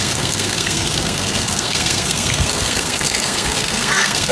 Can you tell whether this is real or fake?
fake